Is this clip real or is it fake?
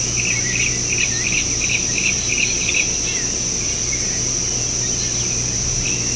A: real